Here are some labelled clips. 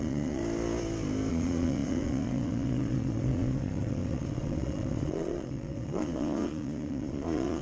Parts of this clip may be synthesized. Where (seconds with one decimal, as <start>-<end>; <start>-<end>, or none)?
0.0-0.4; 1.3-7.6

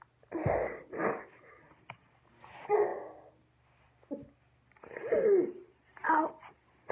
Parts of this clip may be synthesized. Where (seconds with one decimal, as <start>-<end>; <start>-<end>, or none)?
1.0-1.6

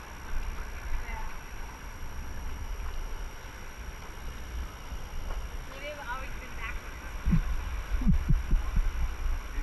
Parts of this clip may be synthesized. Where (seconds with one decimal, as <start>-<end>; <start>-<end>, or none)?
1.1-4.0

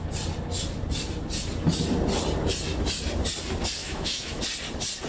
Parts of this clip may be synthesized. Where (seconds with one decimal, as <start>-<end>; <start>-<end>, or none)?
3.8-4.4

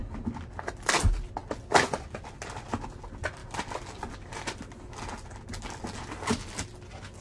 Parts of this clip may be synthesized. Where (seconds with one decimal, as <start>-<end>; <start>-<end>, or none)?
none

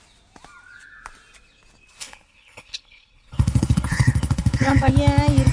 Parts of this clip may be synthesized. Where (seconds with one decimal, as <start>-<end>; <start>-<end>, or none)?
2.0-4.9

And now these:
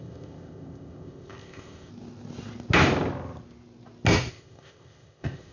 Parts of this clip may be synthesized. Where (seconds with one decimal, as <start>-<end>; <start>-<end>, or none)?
0.0-1.9; 4.3-5.5